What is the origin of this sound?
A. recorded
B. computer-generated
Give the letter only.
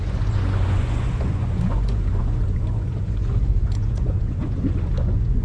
B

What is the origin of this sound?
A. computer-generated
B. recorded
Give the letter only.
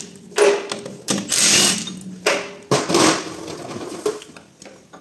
B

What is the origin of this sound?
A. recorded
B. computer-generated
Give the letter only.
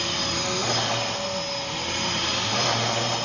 A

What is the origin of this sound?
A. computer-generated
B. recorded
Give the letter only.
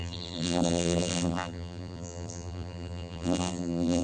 A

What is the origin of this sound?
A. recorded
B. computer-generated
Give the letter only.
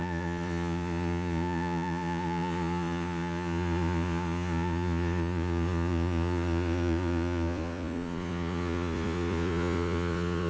B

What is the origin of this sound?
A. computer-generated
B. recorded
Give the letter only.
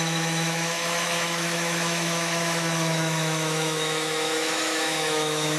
A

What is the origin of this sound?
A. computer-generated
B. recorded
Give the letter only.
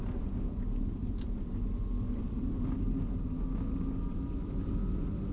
B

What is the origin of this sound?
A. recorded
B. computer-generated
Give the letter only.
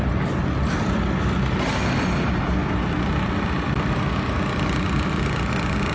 A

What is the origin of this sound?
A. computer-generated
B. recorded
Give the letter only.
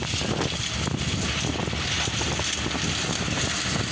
B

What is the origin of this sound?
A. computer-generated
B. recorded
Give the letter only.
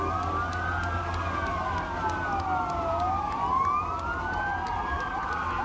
B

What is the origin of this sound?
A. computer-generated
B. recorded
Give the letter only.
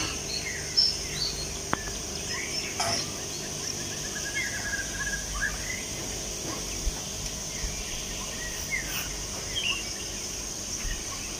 B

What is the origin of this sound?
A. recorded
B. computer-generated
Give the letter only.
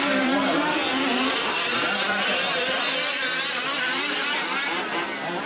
B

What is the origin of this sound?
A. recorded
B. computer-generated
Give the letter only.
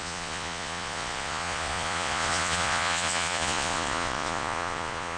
B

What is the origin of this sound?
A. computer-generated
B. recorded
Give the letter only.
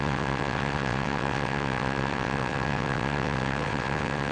A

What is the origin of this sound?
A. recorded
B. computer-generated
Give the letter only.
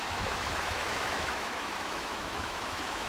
B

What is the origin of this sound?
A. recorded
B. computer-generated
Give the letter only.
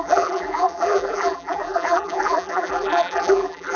B